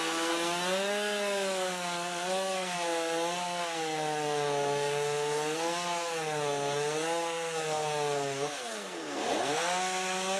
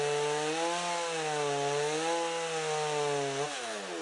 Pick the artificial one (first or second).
first